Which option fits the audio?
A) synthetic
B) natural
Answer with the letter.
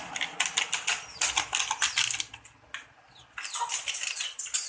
B